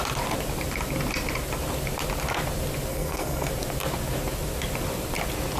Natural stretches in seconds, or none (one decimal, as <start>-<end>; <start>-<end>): 0.0-2.9; 3.5-5.6